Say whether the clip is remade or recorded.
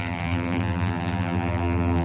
remade